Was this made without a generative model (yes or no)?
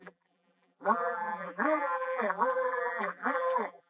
no